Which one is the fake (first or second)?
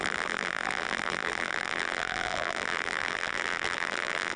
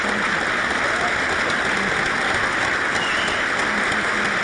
first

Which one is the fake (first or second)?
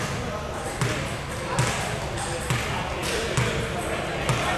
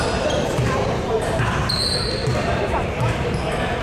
second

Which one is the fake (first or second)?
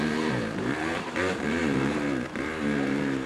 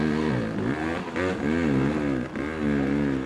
first